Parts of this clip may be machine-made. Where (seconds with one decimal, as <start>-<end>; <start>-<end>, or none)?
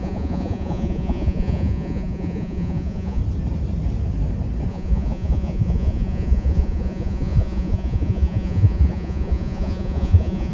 0.0-3.2; 4.7-10.5